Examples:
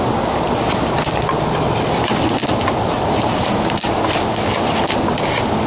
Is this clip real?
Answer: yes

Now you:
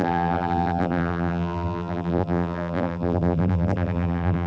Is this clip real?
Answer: no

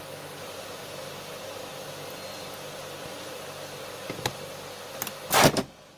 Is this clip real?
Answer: yes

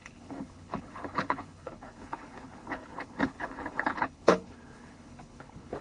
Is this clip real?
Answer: no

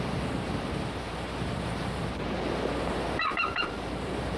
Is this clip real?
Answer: no